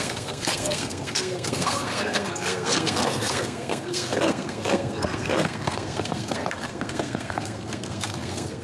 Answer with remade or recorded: remade